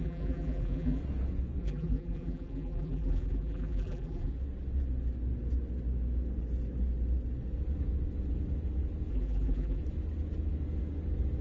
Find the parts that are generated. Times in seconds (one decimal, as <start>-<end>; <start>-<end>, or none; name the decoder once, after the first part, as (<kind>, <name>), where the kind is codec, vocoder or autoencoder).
0.0-1.0 (vocoder, BigVGAN v2); 1.6-4.3; 9.1-9.8

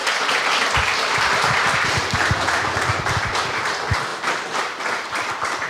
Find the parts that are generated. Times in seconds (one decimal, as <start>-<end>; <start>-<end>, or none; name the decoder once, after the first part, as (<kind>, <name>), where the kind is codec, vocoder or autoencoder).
0.0-5.7 (vocoder, BigVGAN v2)

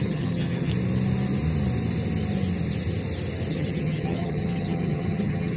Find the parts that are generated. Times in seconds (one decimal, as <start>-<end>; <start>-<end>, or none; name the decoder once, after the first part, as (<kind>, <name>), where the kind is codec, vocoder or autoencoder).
0.0-0.7 (vocoder, HiFi-GAN); 3.5-5.6

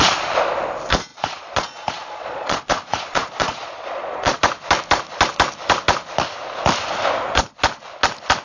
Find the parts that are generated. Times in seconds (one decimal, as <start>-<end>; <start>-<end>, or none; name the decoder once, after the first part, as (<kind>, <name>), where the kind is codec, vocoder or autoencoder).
1.1-4.4 (vocoder, Vocos)

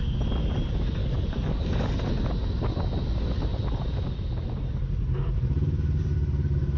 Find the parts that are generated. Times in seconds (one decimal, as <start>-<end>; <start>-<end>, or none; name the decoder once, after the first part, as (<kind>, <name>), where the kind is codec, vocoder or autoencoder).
1.0-1.9 (codec, DAC)